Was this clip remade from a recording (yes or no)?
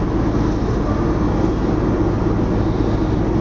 no